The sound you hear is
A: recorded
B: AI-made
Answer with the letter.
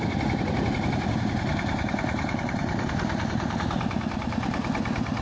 B